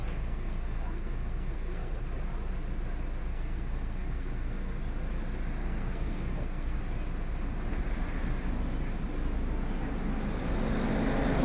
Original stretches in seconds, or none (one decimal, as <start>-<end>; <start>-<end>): 2.0-3.3; 4.8-5.6; 6.8-11.4